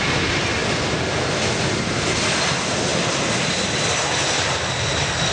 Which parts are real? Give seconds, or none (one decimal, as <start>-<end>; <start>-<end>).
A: 0.0-2.9